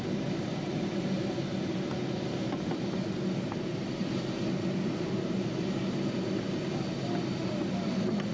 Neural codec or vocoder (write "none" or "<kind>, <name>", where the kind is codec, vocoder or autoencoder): none